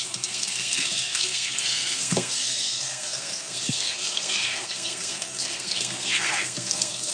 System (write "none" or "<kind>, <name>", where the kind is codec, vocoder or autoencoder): codec, SNAC